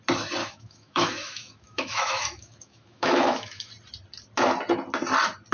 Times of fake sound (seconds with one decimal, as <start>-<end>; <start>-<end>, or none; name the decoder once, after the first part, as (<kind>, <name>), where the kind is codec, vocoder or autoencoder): 0.4-3.7 (autoencoder, DAC-VAE)